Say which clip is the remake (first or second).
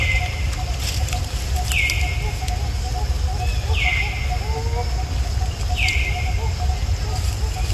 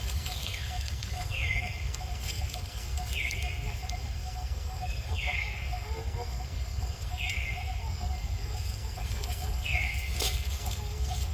second